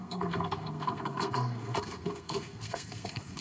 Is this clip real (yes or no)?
no